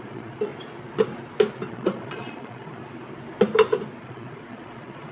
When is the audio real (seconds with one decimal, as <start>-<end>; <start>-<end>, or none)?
0.5-1.7; 2.8-4.0